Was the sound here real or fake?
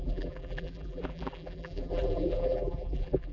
fake